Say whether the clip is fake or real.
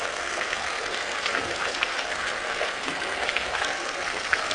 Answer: fake